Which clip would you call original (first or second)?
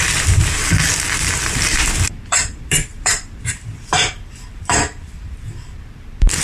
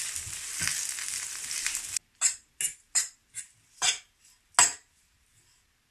second